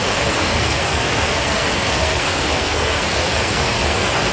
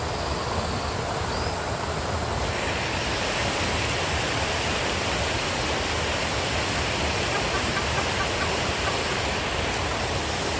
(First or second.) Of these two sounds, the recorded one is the second